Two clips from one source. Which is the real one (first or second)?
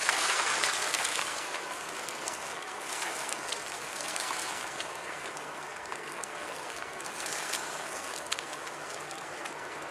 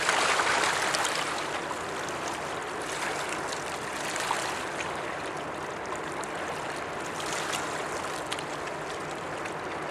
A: second